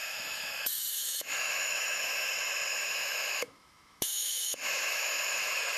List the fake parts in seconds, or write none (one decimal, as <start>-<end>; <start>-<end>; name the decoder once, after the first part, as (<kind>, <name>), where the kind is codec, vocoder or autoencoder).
0.0-2.3 (autoencoder, DAC-VAE); 2.7-5.8